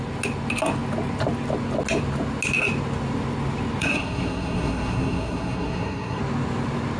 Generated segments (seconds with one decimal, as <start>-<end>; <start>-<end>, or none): 3.8-6.2